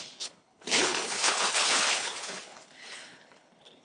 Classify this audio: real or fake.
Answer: fake